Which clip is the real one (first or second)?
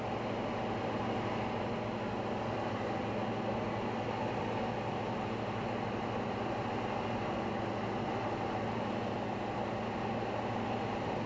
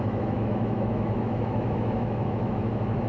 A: first